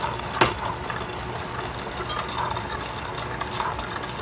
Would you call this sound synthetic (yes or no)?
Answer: no